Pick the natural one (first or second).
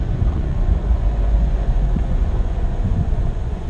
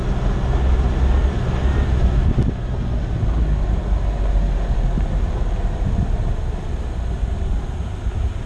second